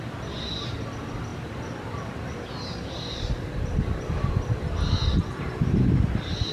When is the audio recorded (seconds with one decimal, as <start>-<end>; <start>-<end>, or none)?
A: 0.0-6.5